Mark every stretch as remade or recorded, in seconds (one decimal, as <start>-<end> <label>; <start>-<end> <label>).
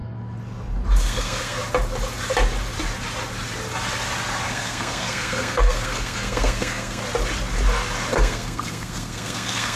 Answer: 0.0-1.0 recorded; 1.0-1.6 remade; 1.6-4.5 recorded; 4.5-7.0 remade; 7.0-8.1 recorded; 8.1-9.8 remade